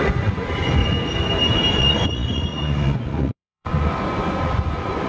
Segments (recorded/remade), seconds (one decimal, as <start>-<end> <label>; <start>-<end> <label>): 0.0-0.8 remade; 0.8-1.7 recorded; 1.7-5.1 remade